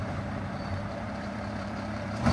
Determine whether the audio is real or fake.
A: fake